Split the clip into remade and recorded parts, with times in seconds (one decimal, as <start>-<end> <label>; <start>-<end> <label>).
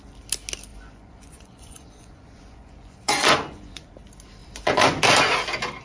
0.0-0.7 recorded; 0.7-3.9 remade; 3.9-4.4 recorded; 4.4-5.0 remade; 5.0-5.8 recorded